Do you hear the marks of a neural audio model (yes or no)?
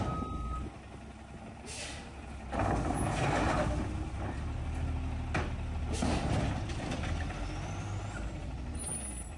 no